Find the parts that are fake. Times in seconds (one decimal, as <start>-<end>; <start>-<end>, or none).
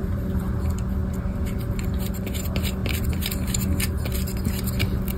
0.0-0.5